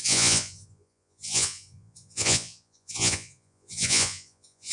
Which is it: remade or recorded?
remade